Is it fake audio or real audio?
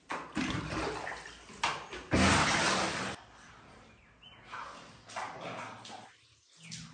real